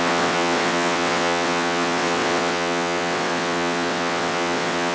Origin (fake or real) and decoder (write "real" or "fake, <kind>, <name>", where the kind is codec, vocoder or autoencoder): fake, vocoder, WaveNeXt